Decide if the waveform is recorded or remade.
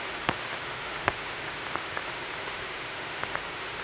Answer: remade